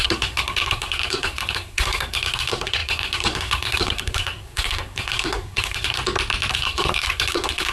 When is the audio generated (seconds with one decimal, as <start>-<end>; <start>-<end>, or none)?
0.0-6.0; 6.5-7.7